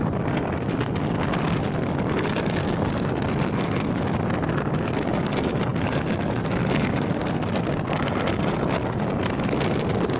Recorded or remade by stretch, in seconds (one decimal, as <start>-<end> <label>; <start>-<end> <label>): 0.0-10.2 recorded